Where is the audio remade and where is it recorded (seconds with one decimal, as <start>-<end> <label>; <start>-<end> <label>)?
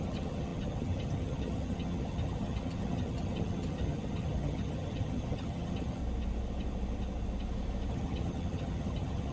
0.0-6.0 remade; 6.0-7.9 recorded; 7.9-9.3 remade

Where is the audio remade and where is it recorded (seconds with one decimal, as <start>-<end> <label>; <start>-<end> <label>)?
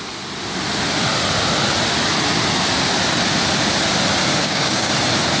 0.0-4.4 recorded; 4.4-4.9 remade; 4.9-5.4 recorded